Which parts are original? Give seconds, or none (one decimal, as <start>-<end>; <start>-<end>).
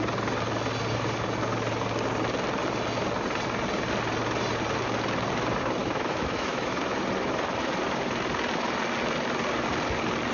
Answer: 0.0-5.8; 6.8-10.3